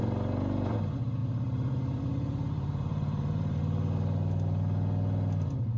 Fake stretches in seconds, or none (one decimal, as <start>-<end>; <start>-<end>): 1.2-3.6